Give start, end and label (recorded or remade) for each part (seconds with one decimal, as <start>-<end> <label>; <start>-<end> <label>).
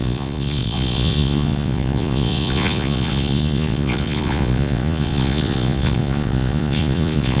0.0-7.4 remade